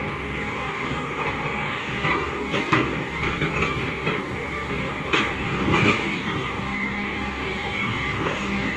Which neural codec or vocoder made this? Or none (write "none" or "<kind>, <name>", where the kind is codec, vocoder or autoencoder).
codec, DAC